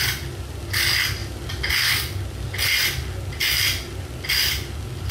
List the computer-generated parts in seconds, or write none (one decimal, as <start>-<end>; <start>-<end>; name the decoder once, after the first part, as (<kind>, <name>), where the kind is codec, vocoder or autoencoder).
none

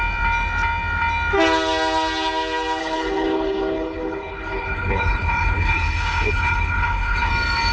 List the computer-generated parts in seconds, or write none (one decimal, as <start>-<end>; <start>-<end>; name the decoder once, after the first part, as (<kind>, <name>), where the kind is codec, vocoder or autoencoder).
2.8-7.3 (codec, HILCodec)